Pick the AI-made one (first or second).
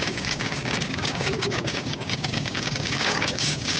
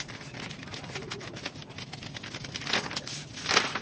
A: first